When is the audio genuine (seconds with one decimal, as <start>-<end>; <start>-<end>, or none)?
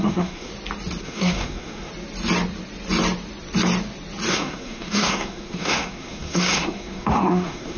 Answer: 0.5-1.0; 1.9-4.3